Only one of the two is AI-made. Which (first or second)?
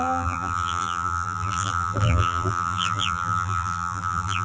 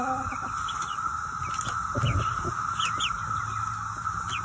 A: first